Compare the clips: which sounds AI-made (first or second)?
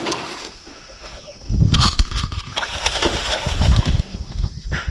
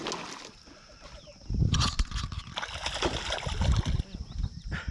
first